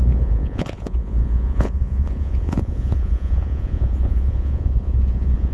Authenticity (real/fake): fake